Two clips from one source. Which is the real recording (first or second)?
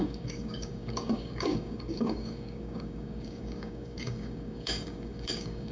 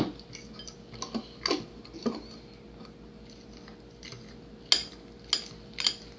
second